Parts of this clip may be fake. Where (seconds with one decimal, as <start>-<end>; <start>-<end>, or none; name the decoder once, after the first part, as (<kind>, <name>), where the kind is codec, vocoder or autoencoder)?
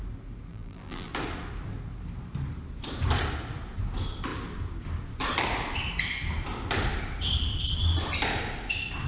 0.5-1.1 (vocoder, BigVGAN v2)